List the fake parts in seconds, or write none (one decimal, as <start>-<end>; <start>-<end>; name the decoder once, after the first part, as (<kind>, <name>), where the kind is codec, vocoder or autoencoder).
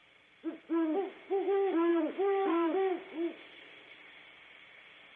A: 1.9-3.1 (vocoder, BigVGAN v2)